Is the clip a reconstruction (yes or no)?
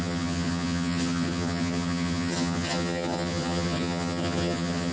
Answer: yes